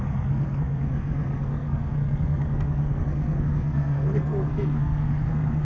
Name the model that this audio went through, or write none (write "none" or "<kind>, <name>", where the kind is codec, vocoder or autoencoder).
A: codec, SNAC